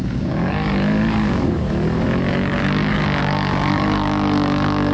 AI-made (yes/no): yes